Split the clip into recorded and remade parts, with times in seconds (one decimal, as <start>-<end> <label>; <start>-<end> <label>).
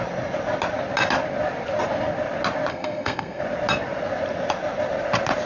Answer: 0.0-2.7 recorded; 2.7-3.4 remade; 3.4-5.5 recorded